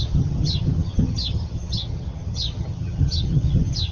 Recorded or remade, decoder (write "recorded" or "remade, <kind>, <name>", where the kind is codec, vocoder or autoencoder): remade, vocoder, HiFi-GAN